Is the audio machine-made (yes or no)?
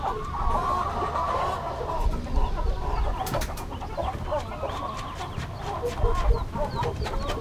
no